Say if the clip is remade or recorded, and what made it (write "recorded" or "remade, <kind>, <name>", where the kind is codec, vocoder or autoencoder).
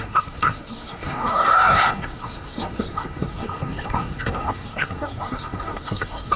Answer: remade, codec, SNAC